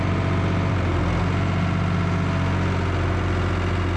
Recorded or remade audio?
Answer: recorded